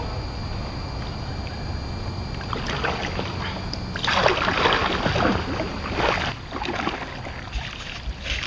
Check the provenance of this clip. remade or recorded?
recorded